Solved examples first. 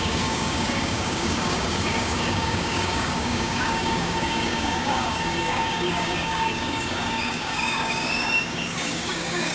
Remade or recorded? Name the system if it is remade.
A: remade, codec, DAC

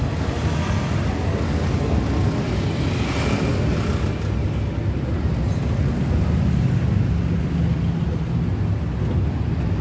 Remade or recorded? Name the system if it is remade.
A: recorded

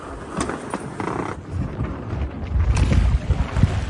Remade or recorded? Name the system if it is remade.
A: recorded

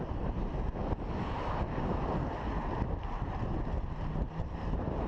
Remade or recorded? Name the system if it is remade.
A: recorded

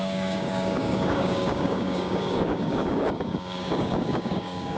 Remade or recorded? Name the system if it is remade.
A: remade, codec, DAC